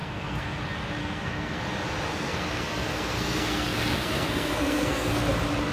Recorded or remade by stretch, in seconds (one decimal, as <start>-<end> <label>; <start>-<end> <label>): 0.0-0.6 remade; 0.6-1.0 recorded; 1.0-1.6 remade; 1.6-2.1 recorded; 2.1-5.2 remade; 5.2-5.7 recorded